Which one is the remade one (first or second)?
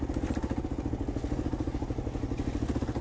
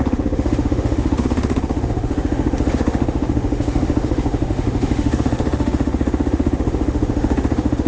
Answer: second